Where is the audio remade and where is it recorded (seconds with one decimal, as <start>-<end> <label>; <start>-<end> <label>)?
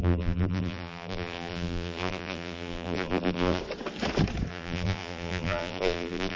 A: 0.0-3.6 remade; 3.6-4.5 recorded; 4.5-6.4 remade